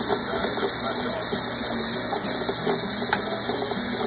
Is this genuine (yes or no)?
yes